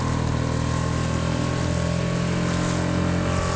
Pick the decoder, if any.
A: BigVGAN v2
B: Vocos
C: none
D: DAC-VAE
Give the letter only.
C